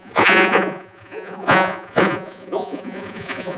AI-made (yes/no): yes